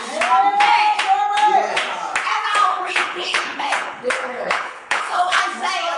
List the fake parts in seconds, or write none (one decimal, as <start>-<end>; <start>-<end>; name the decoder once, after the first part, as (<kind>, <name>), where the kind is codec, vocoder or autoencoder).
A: 2.7-5.4 (codec, HILCodec)